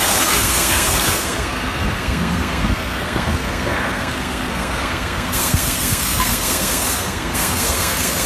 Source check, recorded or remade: remade